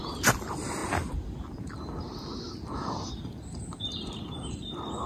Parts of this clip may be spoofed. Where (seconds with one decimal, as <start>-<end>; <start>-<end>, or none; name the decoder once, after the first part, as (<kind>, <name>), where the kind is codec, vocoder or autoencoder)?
none